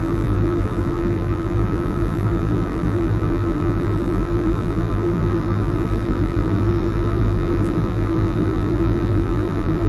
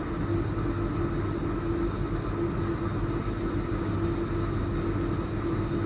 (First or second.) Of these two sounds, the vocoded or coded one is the first